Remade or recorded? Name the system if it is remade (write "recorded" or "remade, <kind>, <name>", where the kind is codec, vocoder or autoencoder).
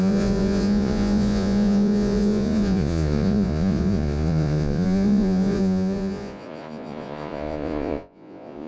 remade, vocoder, Vocos